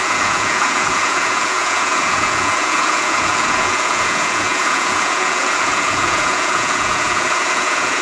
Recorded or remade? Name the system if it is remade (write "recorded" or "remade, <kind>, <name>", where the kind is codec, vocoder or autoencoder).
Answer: remade, vocoder, Vocos